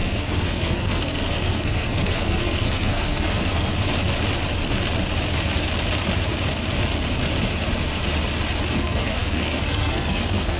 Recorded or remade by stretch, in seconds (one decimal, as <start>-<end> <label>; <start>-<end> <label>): 0.0-3.7 remade; 3.7-8.7 recorded; 8.7-10.6 remade